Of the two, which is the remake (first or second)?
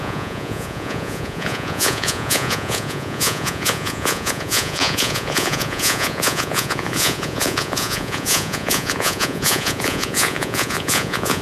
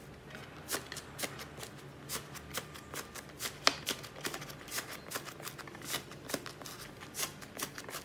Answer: first